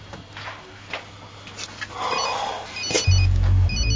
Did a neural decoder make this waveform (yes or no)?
no